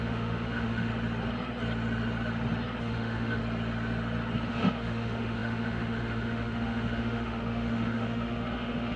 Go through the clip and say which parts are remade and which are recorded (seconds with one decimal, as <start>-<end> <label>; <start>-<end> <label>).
0.0-0.9 remade; 0.9-2.8 recorded; 2.8-3.4 remade; 3.4-4.5 recorded; 4.5-9.0 remade